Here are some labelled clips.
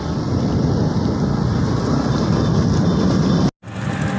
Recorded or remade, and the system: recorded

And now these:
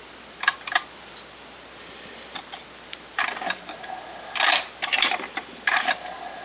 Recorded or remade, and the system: remade, vocoder, BigVGAN v2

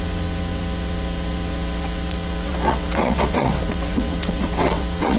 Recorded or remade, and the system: remade, vocoder, WaveNeXt